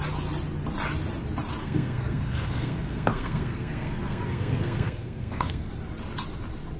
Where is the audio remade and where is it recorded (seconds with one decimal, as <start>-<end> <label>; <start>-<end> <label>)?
0.0-1.6 recorded; 1.6-5.7 remade; 5.7-6.8 recorded